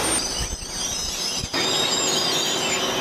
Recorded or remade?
recorded